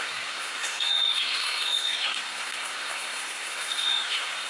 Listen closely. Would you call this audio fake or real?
fake